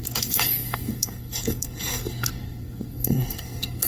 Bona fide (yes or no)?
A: no